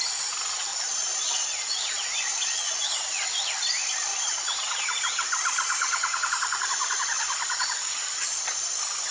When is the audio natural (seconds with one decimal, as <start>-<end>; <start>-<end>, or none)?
0.0-0.7; 3.3-4.1; 8.7-9.1